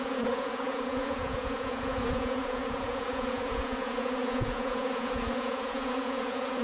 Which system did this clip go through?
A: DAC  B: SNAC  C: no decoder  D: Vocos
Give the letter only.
D